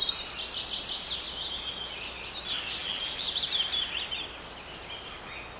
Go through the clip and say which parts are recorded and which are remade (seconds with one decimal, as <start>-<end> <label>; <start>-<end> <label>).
0.0-2.8 recorded; 2.8-3.4 remade; 3.4-5.6 recorded